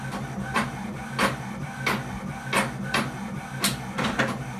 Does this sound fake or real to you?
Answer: real